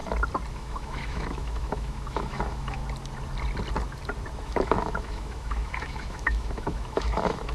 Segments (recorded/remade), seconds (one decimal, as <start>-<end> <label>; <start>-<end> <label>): 0.0-0.5 recorded; 0.5-2.8 remade; 2.8-4.4 recorded; 4.4-7.5 remade